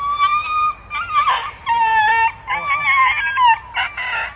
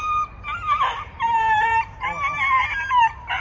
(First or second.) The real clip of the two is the first